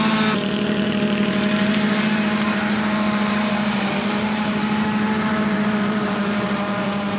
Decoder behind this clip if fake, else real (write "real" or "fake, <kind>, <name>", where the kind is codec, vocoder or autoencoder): fake, vocoder, BigVGAN v2